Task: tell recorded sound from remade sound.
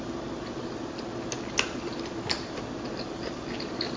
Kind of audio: recorded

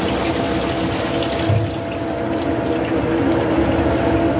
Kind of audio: recorded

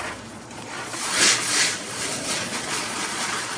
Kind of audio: remade